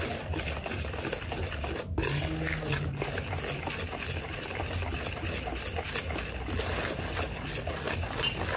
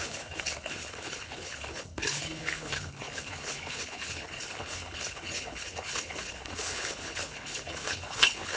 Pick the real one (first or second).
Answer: first